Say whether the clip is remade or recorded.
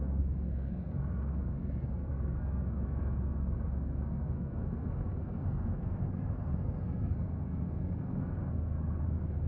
remade